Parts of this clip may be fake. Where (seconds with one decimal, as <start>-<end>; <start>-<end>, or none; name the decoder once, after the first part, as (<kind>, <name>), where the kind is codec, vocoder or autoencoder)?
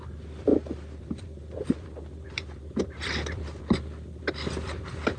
none